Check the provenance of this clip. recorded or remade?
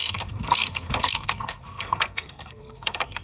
remade